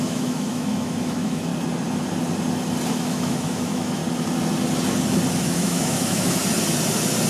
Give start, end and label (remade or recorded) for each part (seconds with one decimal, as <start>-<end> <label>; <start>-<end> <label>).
0.0-1.5 remade; 1.5-2.9 recorded; 2.9-4.0 remade; 4.0-5.4 recorded; 5.4-6.4 remade; 6.4-7.3 recorded